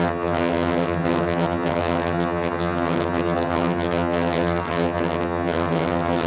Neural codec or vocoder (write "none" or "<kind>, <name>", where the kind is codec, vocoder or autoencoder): vocoder, HiFi-GAN